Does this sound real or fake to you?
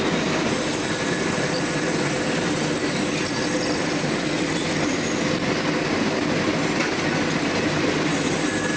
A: real